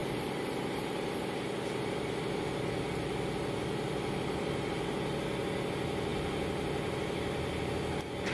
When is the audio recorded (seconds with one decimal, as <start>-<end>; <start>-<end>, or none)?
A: 4.9-6.1; 7.6-8.3